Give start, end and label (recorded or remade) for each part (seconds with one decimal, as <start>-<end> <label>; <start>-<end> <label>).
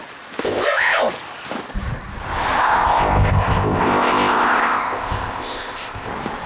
0.0-0.4 recorded; 0.4-1.1 remade; 1.1-2.6 recorded; 2.6-6.1 remade; 6.1-6.5 recorded